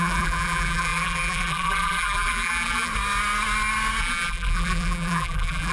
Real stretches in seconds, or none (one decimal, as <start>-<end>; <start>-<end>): 2.9-4.0